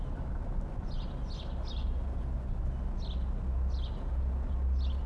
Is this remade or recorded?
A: recorded